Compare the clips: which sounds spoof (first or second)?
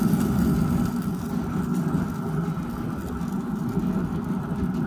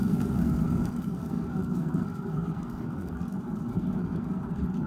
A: second